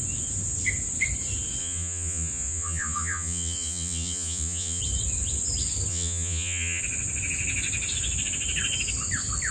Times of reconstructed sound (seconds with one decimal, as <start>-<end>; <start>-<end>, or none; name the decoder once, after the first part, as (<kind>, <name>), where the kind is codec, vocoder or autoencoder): 1.6-4.8 (vocoder, Vocos); 5.9-6.8

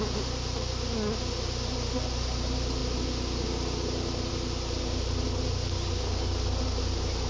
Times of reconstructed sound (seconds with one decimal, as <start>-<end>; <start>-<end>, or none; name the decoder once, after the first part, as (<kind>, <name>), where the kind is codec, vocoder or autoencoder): none